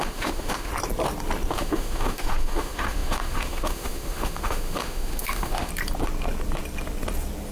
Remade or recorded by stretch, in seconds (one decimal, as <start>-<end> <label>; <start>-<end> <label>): 0.0-0.7 remade; 0.7-1.5 recorded; 1.5-5.7 remade; 5.7-7.5 recorded